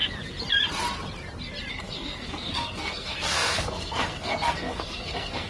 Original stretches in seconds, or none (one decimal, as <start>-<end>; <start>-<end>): 0.0-1.7